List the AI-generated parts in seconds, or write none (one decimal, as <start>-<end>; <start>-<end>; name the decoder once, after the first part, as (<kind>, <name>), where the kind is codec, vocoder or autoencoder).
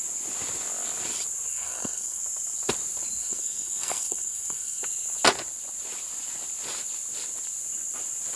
1.5-2.2 (codec, SNAC); 3.2-4.8